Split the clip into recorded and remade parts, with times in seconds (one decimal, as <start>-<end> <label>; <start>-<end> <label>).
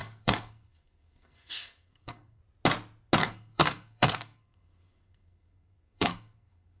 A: 0.0-2.4 remade; 2.4-3.2 recorded; 3.2-6.8 remade